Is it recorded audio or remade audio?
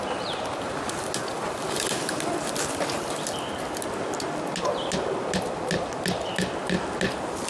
recorded